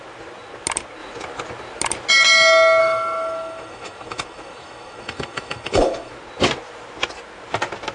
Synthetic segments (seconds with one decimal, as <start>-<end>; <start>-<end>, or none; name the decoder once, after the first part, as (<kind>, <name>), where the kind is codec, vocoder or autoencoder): 2.8-6.1 (autoencoder, DAC-VAE)